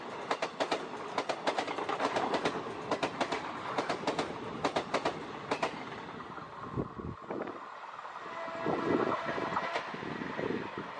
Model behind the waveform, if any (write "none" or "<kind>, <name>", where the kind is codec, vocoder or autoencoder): none